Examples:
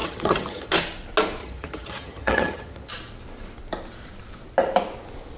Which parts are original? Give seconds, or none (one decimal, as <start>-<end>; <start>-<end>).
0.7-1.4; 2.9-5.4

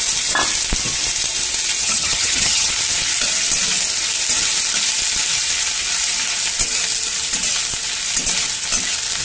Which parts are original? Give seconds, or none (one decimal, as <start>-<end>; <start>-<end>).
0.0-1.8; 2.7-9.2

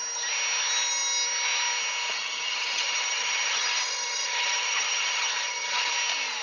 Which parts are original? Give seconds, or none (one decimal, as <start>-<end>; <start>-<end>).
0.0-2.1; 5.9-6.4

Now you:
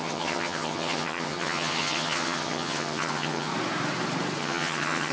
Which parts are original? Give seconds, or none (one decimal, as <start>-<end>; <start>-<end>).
3.5-4.4

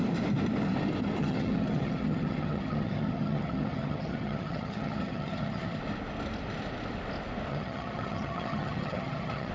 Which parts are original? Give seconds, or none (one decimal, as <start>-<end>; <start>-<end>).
0.0-1.2; 5.8-7.5